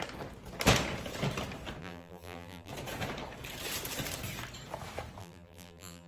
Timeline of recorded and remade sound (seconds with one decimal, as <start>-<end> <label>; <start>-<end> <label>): 0.0-1.8 recorded; 1.8-2.7 remade; 2.7-5.2 recorded; 5.2-6.1 remade